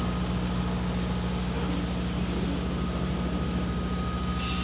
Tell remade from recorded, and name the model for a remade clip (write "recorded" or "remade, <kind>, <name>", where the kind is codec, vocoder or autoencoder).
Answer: recorded